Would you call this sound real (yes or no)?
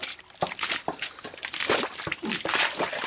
no